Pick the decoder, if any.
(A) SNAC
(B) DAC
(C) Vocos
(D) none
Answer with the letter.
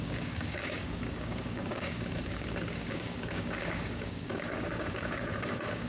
B